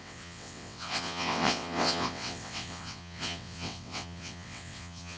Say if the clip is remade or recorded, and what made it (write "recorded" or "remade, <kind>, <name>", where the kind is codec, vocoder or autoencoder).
remade, vocoder, WaveNeXt